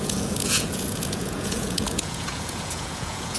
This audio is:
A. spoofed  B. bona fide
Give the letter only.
A